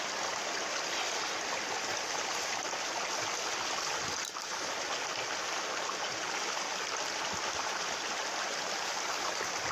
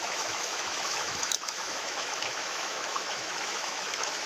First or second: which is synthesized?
second